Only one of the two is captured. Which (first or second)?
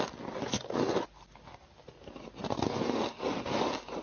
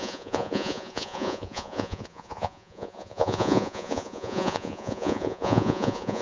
first